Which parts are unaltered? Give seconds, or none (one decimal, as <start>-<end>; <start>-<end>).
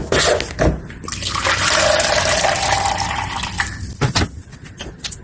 0.0-5.2